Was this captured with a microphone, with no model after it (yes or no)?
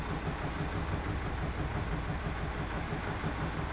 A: yes